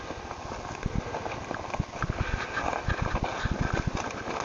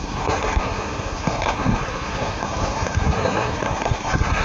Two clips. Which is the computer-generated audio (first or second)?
second